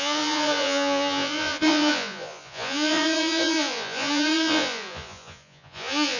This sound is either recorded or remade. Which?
remade